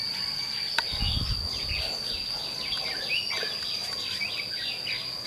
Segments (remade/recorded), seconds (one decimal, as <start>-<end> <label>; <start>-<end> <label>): 0.0-5.3 recorded